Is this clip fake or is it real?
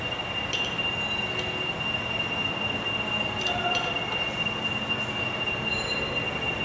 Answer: real